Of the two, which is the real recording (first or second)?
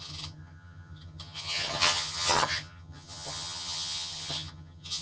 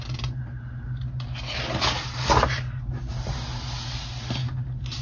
second